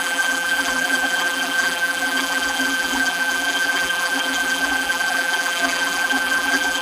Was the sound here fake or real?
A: fake